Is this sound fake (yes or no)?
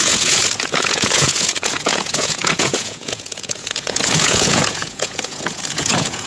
yes